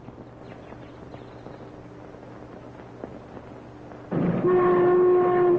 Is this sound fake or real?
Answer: real